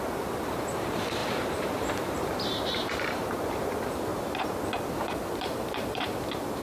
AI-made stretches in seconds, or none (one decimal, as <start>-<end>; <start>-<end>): 0.0-4.1; 4.9-6.6